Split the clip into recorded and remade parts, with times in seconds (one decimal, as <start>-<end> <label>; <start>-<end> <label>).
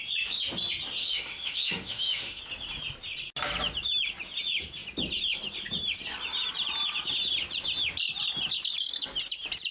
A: 0.0-1.0 recorded; 1.0-2.4 remade; 2.4-9.7 recorded